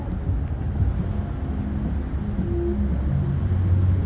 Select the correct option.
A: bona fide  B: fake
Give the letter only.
A